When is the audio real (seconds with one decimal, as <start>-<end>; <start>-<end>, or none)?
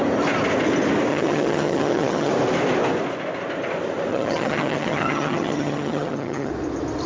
0.0-1.1; 2.3-4.1; 6.5-7.1